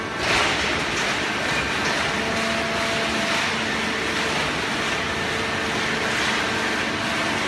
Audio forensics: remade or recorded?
recorded